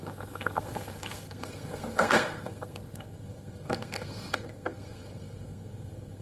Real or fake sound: fake